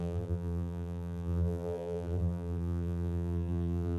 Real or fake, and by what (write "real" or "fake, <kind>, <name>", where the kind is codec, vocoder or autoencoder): fake, vocoder, BigVGAN v2